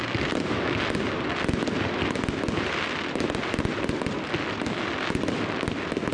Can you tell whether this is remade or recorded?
recorded